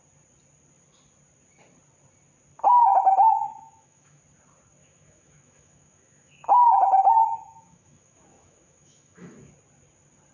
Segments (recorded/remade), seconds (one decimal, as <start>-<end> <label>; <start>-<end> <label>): 0.0-2.7 recorded; 2.7-4.2 remade; 4.2-4.8 recorded; 4.8-9.5 remade; 9.5-10.3 recorded